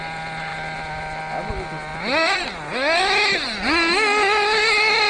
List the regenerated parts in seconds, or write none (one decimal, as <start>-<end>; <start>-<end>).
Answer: none